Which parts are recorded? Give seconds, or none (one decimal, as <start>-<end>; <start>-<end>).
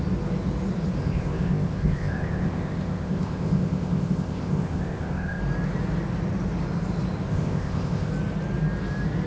0.0-1.0; 5.4-7.3; 8.1-9.3